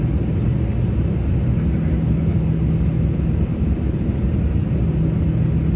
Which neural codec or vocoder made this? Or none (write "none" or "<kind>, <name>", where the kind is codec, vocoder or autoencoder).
none